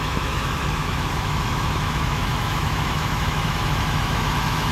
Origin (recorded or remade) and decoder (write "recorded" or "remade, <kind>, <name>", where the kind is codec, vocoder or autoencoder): remade, autoencoder, DAC-VAE